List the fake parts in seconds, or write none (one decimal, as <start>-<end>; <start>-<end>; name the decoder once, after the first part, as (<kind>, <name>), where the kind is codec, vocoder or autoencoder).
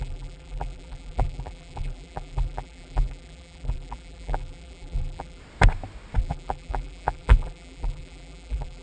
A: 0.0-5.4 (vocoder, BigVGAN v2); 6.2-8.8